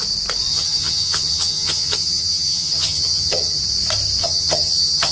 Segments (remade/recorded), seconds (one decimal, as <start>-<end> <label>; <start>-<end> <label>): 0.0-0.5 recorded; 0.5-3.6 remade; 3.6-4.2 recorded; 4.2-5.1 remade